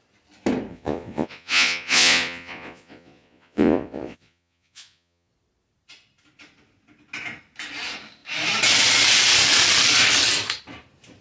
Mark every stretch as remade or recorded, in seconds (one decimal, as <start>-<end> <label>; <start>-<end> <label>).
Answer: 0.0-0.7 recorded; 0.7-5.3 remade; 5.3-11.2 recorded